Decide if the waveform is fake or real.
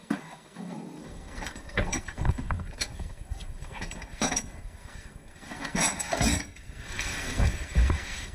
fake